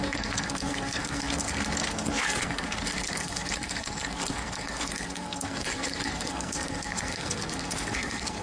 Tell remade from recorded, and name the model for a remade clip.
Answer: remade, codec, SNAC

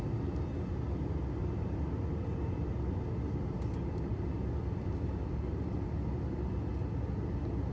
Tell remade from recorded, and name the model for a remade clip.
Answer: recorded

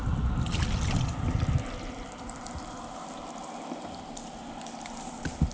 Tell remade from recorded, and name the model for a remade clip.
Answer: recorded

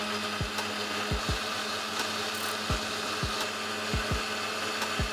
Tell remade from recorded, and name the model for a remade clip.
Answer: recorded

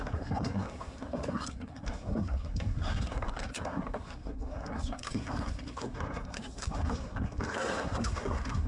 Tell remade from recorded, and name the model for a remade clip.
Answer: remade, codec, SNAC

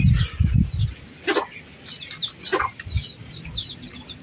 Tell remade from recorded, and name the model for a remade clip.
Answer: recorded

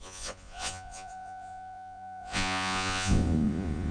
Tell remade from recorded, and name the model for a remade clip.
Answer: remade, vocoder, Vocos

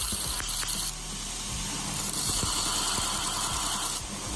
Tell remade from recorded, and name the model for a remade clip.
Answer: recorded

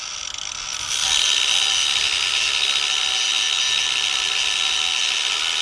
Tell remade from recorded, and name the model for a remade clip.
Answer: recorded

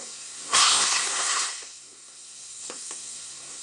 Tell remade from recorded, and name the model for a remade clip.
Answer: remade, codec, SNAC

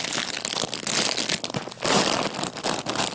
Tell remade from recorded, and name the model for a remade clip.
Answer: recorded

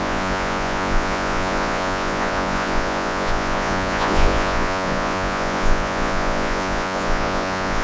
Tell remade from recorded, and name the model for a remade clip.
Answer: remade, vocoder, Vocos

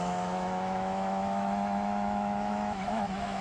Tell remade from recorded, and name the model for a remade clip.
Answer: remade, autoencoder, DAC-VAE